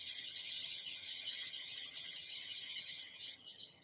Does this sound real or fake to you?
fake